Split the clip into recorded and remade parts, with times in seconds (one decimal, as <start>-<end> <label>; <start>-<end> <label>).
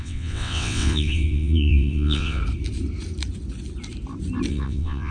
0.0-2.4 remade; 2.4-4.5 recorded; 4.5-5.1 remade